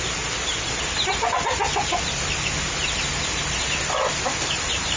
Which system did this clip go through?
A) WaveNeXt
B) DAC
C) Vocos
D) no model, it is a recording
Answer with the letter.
D